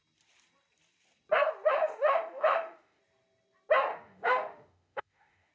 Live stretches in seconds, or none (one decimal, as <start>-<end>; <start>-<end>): 0.0-1.7; 3.0-3.9